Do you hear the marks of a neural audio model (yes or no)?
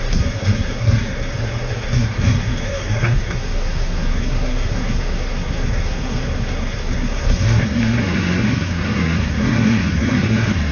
yes